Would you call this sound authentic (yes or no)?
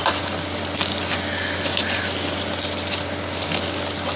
yes